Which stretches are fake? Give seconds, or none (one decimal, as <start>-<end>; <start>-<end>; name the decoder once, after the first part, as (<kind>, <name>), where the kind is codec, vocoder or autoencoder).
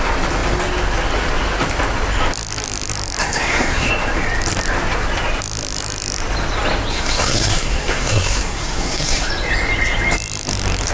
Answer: 3.2-3.9 (codec, SNAC); 6.9-9.3